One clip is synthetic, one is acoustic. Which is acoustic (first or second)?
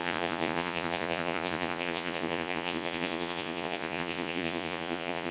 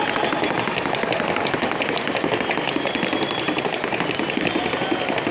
second